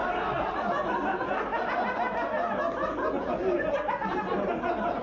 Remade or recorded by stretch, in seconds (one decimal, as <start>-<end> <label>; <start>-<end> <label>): 0.0-5.0 recorded